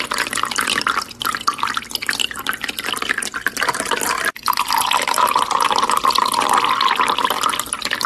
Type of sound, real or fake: real